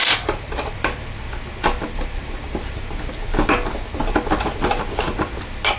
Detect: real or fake real